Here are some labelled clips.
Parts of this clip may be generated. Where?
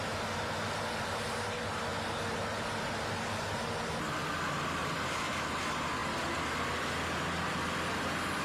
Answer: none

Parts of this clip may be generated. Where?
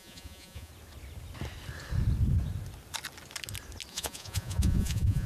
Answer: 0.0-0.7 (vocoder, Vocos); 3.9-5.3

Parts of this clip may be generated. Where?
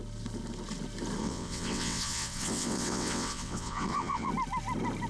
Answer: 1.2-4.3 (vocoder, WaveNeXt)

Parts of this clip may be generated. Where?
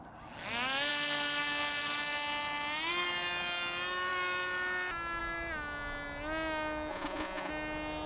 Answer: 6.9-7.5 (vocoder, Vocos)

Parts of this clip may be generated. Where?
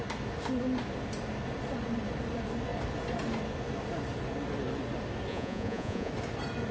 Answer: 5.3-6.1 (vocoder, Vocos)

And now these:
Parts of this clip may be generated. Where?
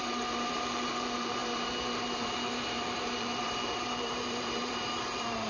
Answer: 0.0-5.5 (vocoder, BigVGAN v2)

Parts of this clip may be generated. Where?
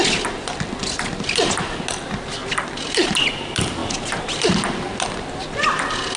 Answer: none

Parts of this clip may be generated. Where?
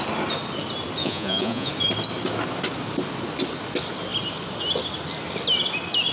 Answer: 1.0-1.7 (vocoder, Vocos)